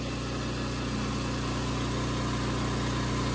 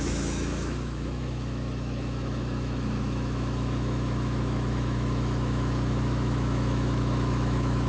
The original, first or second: first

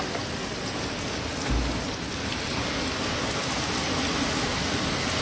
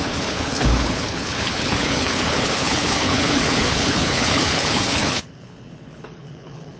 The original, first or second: first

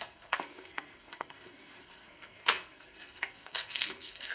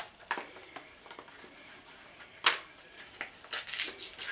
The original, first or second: second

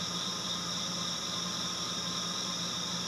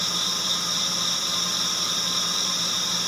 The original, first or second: second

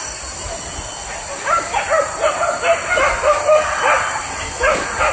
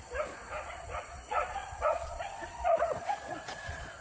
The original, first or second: first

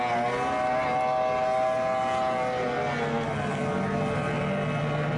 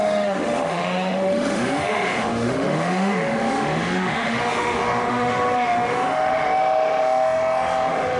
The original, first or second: first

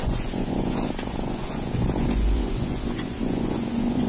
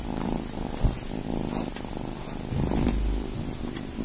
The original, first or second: second